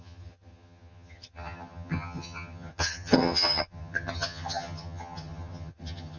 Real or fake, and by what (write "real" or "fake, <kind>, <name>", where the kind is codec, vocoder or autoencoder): fake, vocoder, HiFi-GAN